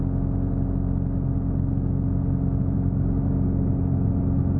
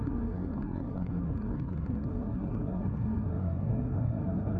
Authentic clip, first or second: first